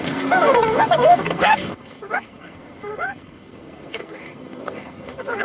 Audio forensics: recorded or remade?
remade